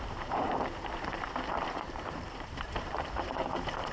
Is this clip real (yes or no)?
no